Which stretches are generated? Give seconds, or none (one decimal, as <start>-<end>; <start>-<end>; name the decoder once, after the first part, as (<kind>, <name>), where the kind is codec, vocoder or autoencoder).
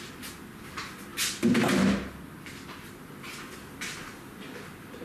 1.1-2.3 (vocoder, BigVGAN v2)